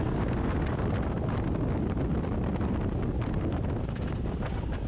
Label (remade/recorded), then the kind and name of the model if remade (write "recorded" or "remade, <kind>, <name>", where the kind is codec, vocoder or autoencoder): recorded